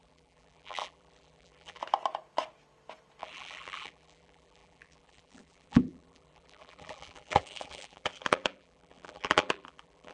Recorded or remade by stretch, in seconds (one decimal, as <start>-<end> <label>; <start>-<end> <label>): 0.0-1.8 remade; 1.8-3.2 recorded; 3.2-10.1 remade